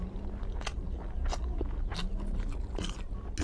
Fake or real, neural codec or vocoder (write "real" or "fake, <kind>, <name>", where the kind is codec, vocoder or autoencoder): real